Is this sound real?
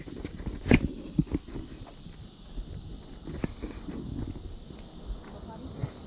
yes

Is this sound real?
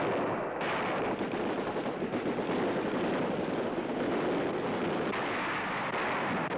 yes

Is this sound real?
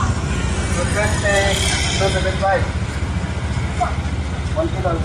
yes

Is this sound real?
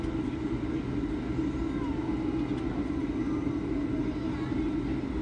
yes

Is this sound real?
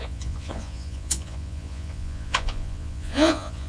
no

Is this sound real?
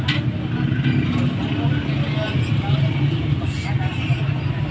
yes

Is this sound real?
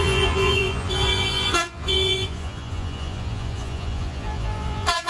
no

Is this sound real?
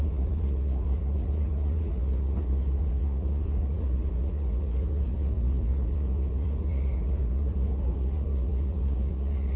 no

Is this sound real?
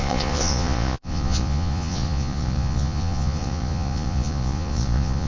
no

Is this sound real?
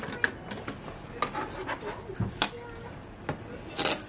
yes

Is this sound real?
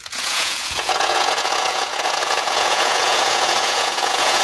no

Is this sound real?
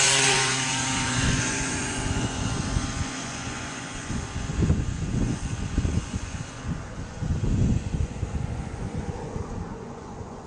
no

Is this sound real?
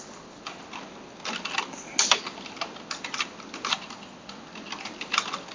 yes